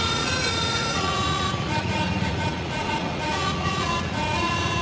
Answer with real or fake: fake